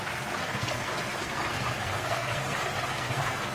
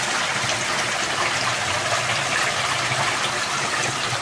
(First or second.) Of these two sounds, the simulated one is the first